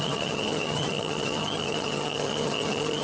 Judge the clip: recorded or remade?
remade